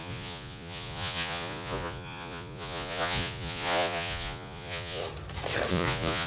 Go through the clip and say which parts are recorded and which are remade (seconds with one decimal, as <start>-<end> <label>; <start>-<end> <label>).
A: 0.0-5.0 remade; 5.0-5.7 recorded; 5.7-6.3 remade